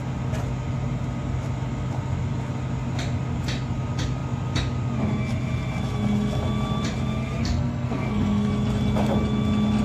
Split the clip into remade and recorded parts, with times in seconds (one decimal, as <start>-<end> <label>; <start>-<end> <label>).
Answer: 0.0-7.4 recorded; 7.4-8.5 remade; 8.5-9.8 recorded